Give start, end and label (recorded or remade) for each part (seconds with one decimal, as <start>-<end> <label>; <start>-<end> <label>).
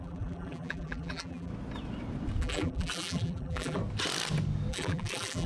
0.0-1.5 remade; 1.5-2.4 recorded; 2.4-3.8 remade; 3.8-4.7 recorded; 4.7-5.5 remade